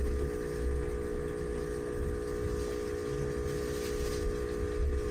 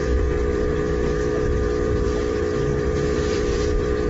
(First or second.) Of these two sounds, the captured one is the first